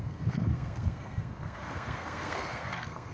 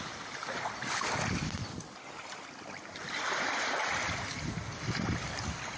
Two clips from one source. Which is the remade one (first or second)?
first